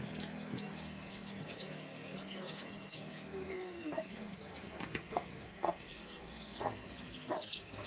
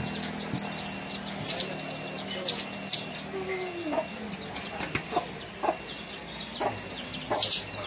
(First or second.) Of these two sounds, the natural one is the second